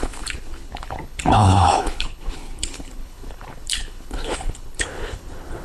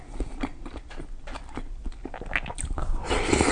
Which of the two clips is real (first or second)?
second